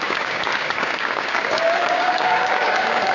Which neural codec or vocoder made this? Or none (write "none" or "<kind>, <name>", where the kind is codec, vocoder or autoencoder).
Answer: codec, DAC